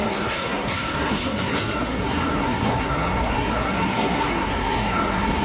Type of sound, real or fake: fake